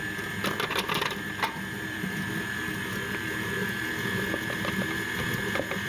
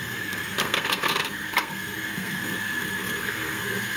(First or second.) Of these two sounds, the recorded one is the first